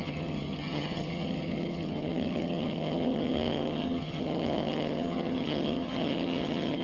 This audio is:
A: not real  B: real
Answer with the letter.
A